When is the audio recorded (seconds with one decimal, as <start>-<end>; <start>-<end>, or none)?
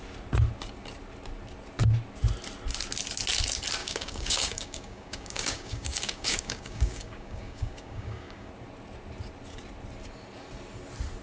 0.0-3.8; 8.5-11.2